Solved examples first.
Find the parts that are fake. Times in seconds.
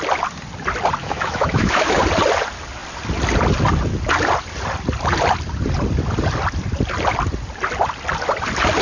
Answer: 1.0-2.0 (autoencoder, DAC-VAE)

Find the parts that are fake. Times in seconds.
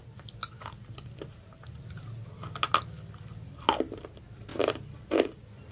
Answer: none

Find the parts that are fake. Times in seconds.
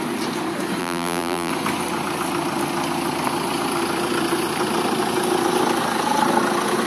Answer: 0.8-1.5 (vocoder, BigVGAN v2)